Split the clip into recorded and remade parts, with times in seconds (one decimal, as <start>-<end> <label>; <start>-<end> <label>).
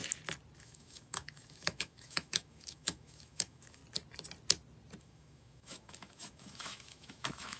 0.0-0.6 recorded; 0.6-3.8 remade; 3.8-5.0 recorded; 5.0-7.6 remade